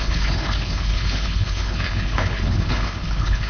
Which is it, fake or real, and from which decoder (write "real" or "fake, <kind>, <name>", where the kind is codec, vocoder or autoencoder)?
fake, codec, HILCodec